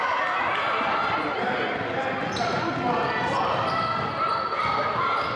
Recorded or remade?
recorded